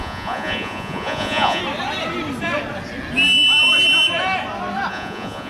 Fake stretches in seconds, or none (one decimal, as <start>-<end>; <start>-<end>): 0.0-1.6; 4.9-5.5

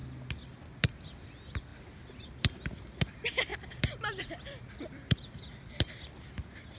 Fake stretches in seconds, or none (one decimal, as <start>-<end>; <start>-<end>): 1.7-2.6; 3.5-6.0

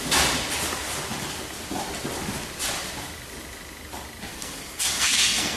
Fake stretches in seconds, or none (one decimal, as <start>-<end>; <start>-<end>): 4.3-5.6

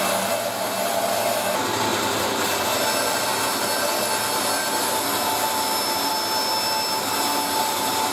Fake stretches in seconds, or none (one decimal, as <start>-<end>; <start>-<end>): none